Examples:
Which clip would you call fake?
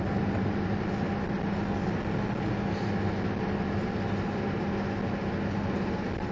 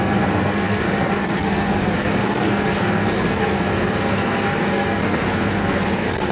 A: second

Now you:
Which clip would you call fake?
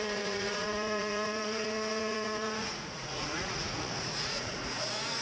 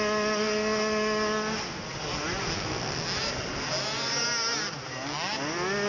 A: first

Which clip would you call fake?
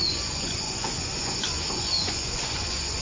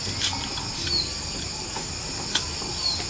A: first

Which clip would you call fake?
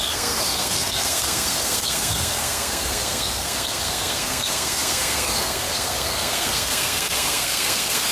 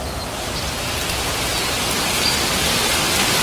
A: first